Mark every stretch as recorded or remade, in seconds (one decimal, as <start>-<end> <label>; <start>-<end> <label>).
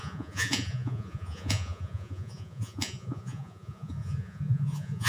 0.0-5.1 remade